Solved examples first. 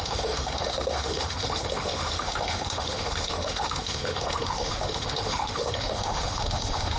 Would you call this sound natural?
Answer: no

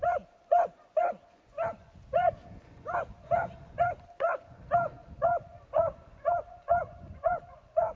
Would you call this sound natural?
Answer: no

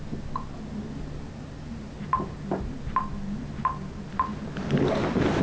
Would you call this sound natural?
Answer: yes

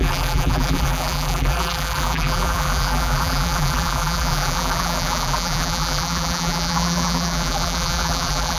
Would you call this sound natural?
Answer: no